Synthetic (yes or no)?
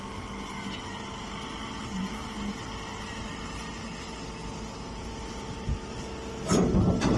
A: no